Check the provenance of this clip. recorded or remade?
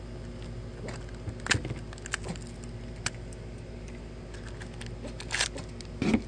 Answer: recorded